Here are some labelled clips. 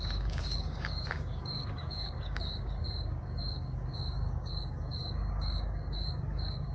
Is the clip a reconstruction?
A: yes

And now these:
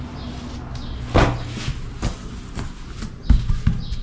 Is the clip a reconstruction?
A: no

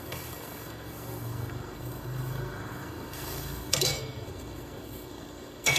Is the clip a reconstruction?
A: yes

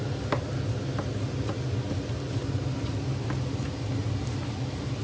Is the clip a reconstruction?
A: no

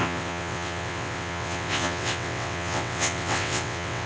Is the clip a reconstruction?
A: yes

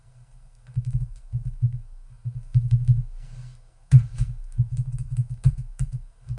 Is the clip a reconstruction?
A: yes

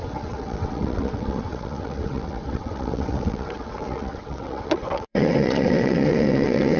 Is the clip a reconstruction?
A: yes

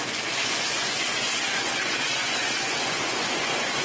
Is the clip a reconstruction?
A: yes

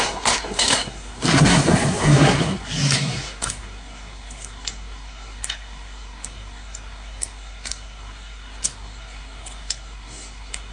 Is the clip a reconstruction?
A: yes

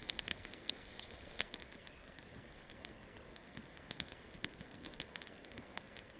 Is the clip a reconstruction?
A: yes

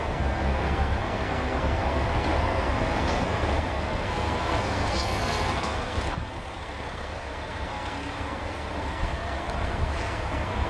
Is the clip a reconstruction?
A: yes